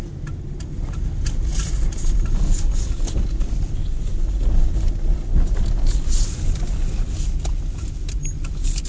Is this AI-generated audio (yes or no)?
no